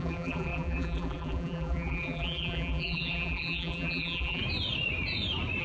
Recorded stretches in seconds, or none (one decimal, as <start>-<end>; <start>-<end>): 4.4-5.6